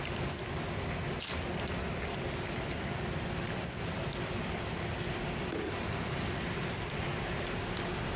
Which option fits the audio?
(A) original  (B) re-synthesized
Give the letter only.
A